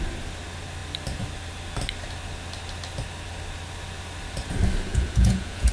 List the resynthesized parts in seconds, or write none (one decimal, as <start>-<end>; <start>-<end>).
4.9-5.7